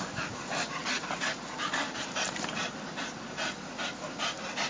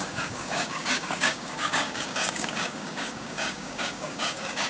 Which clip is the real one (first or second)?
first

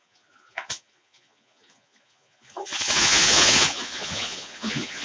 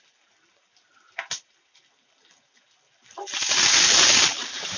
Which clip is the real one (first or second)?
second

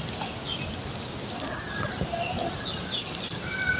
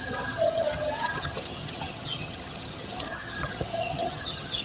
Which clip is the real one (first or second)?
first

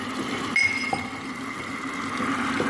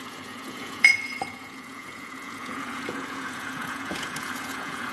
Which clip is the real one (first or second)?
first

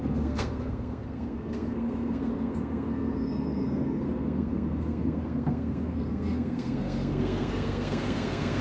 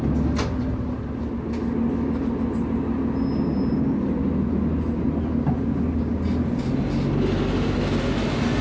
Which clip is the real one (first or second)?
second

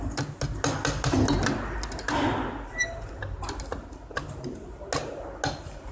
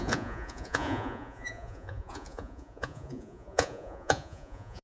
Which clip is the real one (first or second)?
first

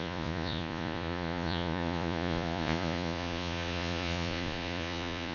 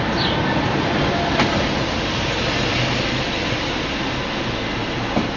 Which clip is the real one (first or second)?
second